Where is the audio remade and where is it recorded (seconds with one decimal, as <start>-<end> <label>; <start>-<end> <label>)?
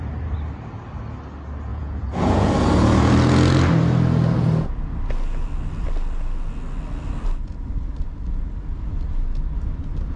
0.0-1.7 recorded; 1.7-2.5 remade; 2.5-10.2 recorded